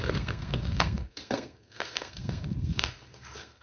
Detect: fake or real fake